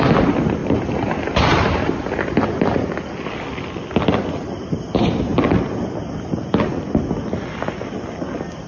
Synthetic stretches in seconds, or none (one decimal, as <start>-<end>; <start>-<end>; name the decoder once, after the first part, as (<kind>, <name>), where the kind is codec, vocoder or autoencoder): 0.6-1.1 (vocoder, BigVGAN v2)